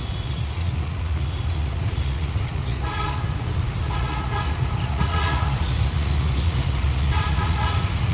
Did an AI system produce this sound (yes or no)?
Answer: yes